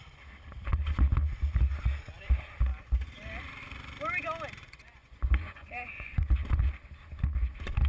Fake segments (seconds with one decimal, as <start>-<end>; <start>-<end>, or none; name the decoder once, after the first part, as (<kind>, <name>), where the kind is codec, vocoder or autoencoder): 4.6-6.3 (vocoder, Vocos)